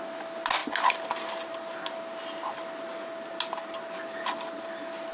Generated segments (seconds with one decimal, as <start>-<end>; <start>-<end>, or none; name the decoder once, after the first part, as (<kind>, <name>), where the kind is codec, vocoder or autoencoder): none